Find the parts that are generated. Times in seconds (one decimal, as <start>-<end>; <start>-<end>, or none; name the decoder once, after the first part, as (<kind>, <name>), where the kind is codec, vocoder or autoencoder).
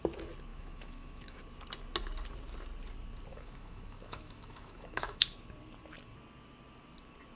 0.5-1.4 (autoencoder, DAC-VAE); 3.3-5.2